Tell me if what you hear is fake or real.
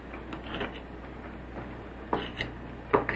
real